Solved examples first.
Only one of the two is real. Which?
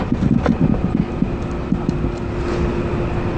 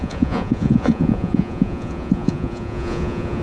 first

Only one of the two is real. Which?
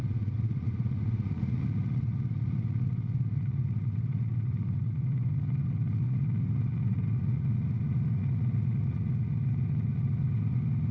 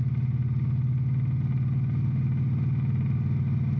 second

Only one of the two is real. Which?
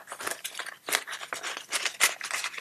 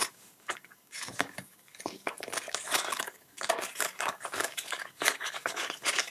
first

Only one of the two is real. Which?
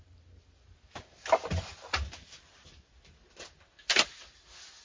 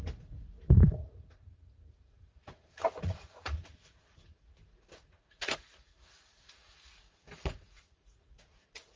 first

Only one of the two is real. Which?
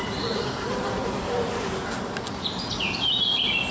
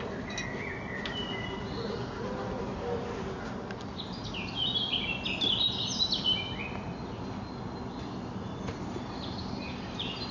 second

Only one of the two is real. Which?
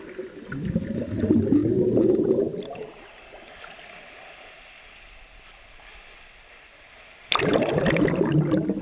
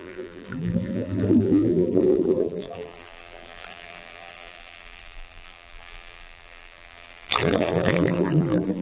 first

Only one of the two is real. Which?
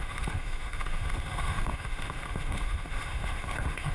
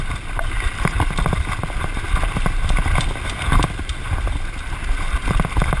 second